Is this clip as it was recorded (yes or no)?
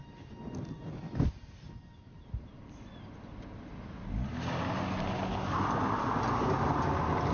yes